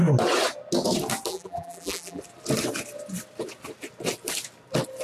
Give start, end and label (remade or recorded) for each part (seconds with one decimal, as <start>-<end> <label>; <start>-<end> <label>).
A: 0.0-1.3 recorded; 1.3-2.2 remade; 2.2-5.0 recorded

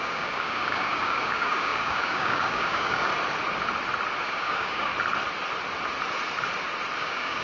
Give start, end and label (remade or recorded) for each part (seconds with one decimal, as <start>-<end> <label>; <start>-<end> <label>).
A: 0.0-3.1 remade; 3.1-4.2 recorded; 4.2-4.9 remade; 4.9-7.0 recorded; 7.0-7.4 remade

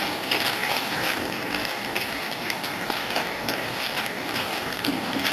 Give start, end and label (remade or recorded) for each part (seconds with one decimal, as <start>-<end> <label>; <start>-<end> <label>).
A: 0.0-5.3 remade

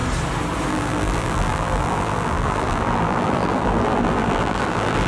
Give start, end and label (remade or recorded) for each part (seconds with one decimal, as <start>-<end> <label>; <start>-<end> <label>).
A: 0.0-0.7 recorded; 0.7-5.1 remade

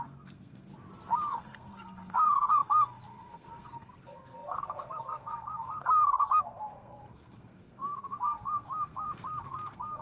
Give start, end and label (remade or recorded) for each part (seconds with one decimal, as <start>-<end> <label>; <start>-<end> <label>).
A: 0.0-0.7 remade; 0.7-1.3 recorded; 1.3-10.0 remade

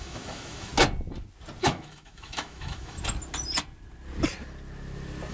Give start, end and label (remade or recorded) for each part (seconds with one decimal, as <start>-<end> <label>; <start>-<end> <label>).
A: 0.0-0.7 remade; 0.7-1.6 recorded; 1.6-3.0 remade; 3.0-5.3 recorded

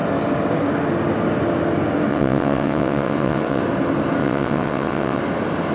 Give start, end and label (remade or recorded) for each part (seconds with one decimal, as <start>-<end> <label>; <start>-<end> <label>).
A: 0.0-2.1 recorded; 2.1-3.6 remade; 3.6-4.2 recorded; 4.2-5.2 remade; 5.2-5.7 recorded

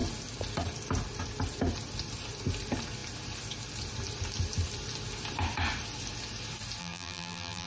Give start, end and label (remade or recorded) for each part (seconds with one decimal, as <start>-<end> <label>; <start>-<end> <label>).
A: 0.0-6.8 recorded; 6.8-7.7 remade